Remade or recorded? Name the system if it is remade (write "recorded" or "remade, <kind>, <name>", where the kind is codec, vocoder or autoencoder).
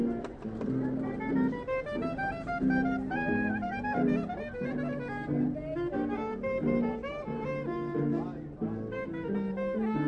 remade, vocoder, BigVGAN v2